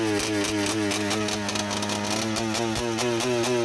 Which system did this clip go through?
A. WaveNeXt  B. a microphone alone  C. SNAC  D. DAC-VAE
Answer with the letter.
B